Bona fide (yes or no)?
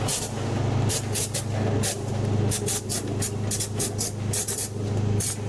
yes